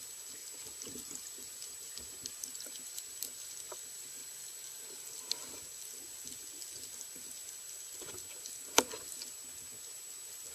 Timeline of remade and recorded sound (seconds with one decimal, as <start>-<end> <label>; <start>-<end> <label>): 0.0-10.5 recorded